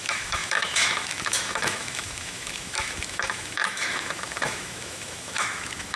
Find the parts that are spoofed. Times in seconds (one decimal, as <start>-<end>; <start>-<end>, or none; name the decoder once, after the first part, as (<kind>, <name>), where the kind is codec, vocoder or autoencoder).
0.0-6.0 (autoencoder, DAC-VAE)